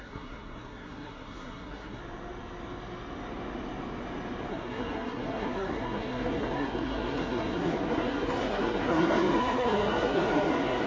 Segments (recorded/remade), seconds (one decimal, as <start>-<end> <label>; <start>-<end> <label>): 0.0-2.0 remade; 2.0-4.5 recorded; 4.5-10.9 remade

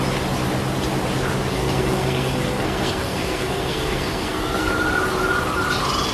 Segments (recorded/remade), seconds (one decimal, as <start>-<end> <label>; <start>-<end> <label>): 0.0-1.5 recorded; 1.5-4.7 remade; 4.7-6.1 recorded

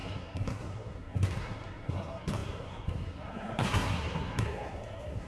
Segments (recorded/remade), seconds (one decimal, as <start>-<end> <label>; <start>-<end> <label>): 0.0-5.3 remade

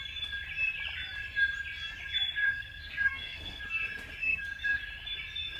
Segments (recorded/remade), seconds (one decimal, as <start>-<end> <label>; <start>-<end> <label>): 0.0-2.4 recorded; 2.4-3.6 remade; 3.6-4.2 recorded; 4.2-4.8 remade; 4.8-5.6 recorded

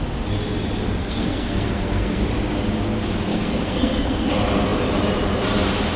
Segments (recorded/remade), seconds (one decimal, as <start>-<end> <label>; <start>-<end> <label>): 0.0-1.0 recorded; 1.0-2.2 remade; 2.2-3.3 recorded; 3.3-4.3 remade; 4.3-6.0 recorded

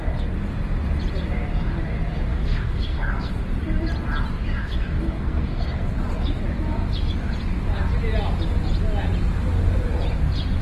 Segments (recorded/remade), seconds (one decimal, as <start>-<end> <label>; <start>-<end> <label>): 0.0-2.3 recorded; 2.3-3.3 remade; 3.3-4.6 recorded; 4.6-5.9 remade; 5.9-10.6 recorded

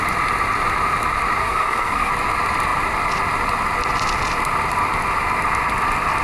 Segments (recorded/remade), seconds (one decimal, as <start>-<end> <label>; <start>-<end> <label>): 0.0-1.4 recorded; 1.4-2.1 remade; 2.1-6.2 recorded